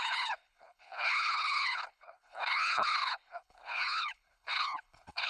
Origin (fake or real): fake